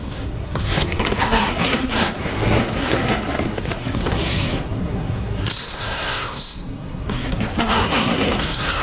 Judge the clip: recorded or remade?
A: remade